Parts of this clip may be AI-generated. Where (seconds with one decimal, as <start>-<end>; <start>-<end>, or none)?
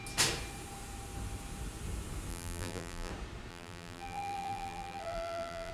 2.3-3.1; 3.5-5.7